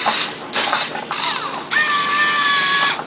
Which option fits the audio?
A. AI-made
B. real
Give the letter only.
B